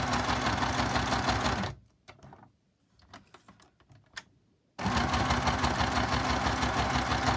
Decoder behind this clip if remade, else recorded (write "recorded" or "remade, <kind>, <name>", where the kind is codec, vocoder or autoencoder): recorded